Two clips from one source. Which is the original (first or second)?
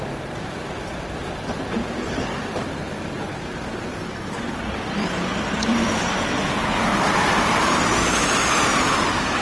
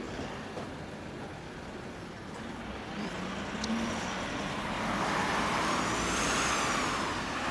second